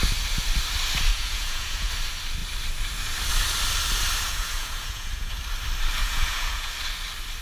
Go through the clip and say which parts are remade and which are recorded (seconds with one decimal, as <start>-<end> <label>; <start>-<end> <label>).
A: 0.0-1.1 recorded; 1.1-1.9 remade; 1.9-4.3 recorded; 4.3-5.3 remade; 5.3-6.0 recorded; 6.0-6.7 remade; 6.7-7.4 recorded